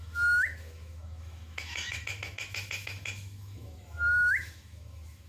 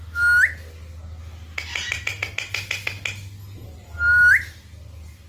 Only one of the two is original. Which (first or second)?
second